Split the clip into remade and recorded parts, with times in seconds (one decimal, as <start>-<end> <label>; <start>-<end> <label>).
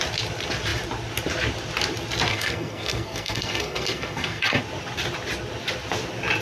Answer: 0.0-2.3 recorded; 2.3-4.6 remade; 4.6-6.4 recorded